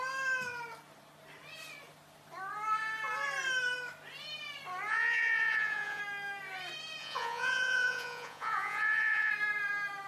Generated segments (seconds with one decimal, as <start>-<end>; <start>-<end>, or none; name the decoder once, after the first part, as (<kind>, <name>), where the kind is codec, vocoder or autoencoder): 4.9-6.0 (vocoder, Vocos); 7.0-9.3